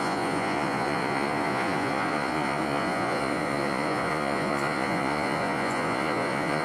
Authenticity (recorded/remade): remade